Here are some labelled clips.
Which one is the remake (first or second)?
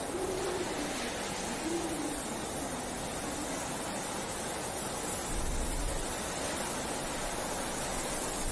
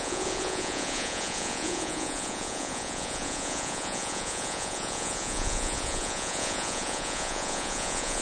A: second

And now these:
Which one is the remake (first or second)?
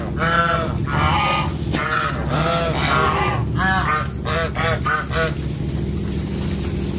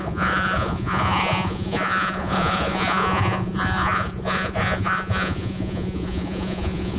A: second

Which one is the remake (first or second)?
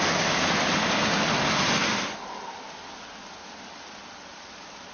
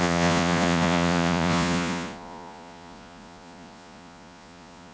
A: second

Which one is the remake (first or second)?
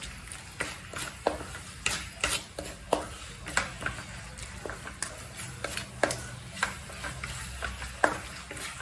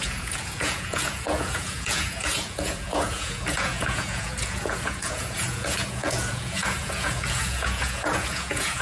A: second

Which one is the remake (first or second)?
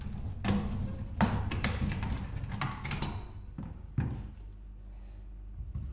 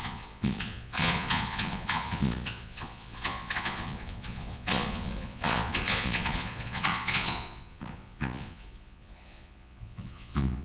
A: second